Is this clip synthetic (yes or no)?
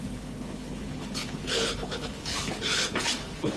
yes